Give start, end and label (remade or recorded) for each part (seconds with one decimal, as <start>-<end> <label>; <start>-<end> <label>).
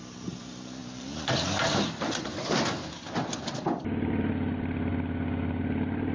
0.0-4.9 remade; 4.9-5.6 recorded; 5.6-6.1 remade